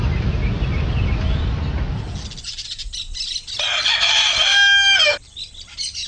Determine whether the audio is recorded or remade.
recorded